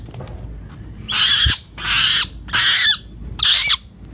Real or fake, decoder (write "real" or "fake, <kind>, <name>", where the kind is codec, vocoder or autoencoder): real